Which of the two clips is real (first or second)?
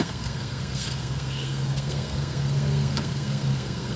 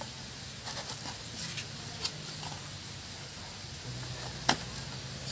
second